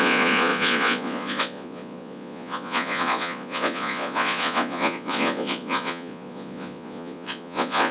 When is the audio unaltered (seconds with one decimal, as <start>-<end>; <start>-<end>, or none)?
none